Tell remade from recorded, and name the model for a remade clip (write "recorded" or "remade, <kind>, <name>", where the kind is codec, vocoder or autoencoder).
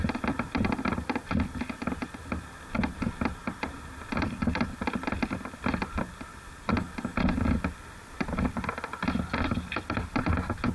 remade, vocoder, BigVGAN v2